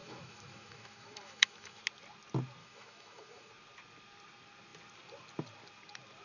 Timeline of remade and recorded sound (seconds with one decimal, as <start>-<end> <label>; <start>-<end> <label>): 0.0-1.8 remade; 1.8-2.6 recorded; 2.6-3.5 remade; 3.5-6.2 recorded